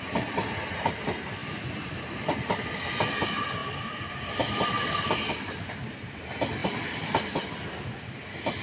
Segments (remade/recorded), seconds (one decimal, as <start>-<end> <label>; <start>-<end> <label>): 0.0-1.4 recorded; 1.4-2.8 remade; 2.8-3.6 recorded; 3.6-5.3 remade; 5.3-6.6 recorded; 6.6-7.5 remade; 7.5-8.6 recorded